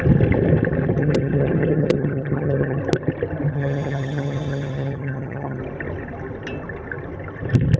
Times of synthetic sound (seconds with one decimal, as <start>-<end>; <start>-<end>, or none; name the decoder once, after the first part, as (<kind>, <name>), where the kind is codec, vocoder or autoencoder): 1.0-2.8 (vocoder, HiFi-GAN); 3.5-5.6